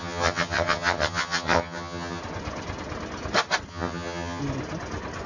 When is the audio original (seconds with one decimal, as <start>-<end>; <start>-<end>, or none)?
2.2-3.7; 4.4-5.3